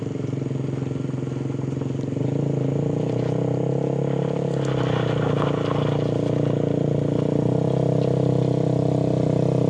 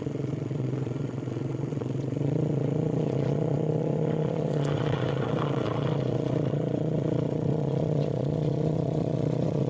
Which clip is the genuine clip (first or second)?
first